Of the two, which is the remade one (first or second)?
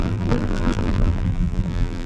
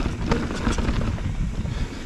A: first